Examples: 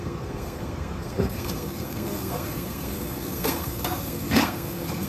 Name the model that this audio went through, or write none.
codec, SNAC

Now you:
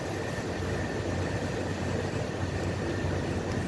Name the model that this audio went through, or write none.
none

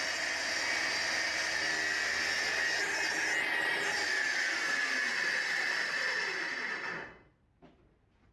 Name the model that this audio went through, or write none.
none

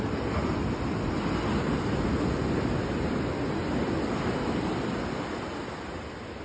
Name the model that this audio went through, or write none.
none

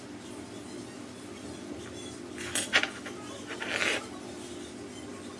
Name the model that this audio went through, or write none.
none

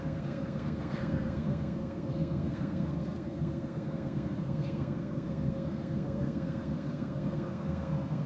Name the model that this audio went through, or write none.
codec, SNAC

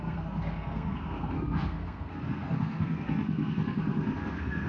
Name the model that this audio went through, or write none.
codec, SNAC